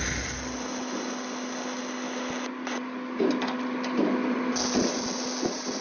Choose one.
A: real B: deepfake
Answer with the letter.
A